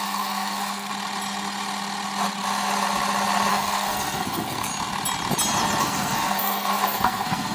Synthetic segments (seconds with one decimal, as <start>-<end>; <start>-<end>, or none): 0.0-0.9; 3.5-4.7; 5.8-7.5